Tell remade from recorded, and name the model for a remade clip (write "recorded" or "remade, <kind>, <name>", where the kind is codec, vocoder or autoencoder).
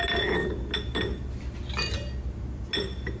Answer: recorded